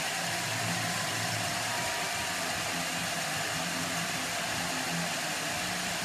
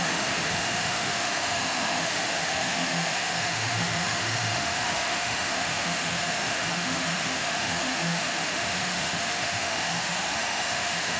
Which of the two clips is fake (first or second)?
second